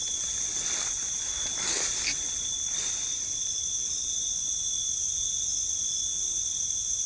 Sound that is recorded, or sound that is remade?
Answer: recorded